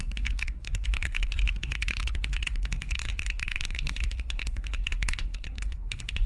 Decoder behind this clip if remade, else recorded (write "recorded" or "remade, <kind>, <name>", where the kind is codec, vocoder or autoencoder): remade, codec, SNAC